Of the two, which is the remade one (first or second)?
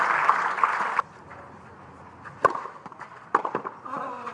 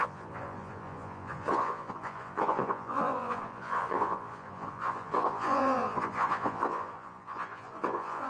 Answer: second